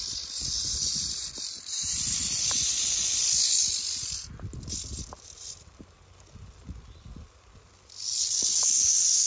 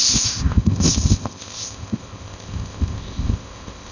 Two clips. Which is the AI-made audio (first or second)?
second